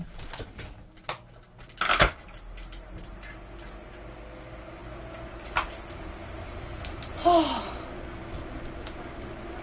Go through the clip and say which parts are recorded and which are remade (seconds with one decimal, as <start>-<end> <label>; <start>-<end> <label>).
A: 0.0-9.6 recorded